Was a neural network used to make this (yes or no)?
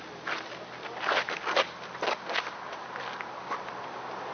no